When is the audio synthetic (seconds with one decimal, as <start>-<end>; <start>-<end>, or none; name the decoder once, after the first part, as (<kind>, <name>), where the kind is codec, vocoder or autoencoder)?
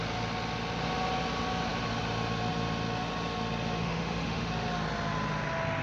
3.8-4.5 (autoencoder, DAC-VAE)